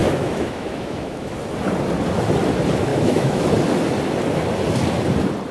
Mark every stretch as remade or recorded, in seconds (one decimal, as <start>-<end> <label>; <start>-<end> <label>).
0.0-1.3 remade; 1.3-2.9 recorded; 2.9-3.5 remade; 3.5-5.5 recorded